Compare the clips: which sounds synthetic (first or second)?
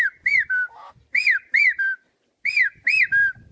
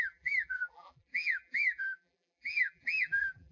second